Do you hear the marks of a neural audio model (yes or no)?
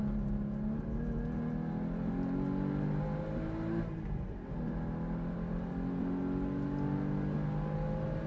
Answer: no